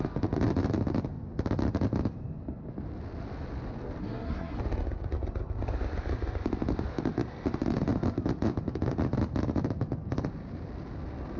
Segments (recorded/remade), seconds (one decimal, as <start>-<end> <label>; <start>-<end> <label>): 0.0-4.0 recorded; 4.0-4.6 remade; 4.6-11.4 recorded